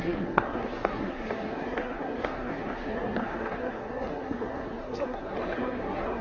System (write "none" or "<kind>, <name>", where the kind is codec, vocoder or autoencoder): codec, SNAC